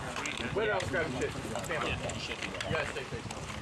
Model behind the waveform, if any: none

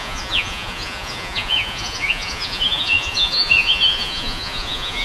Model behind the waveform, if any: vocoder, Vocos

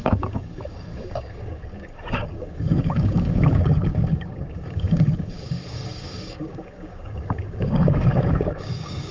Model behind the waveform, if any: codec, DAC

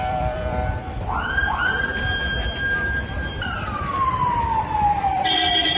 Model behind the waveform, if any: vocoder, BigVGAN v2